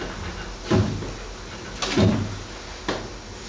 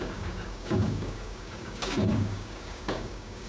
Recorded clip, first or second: first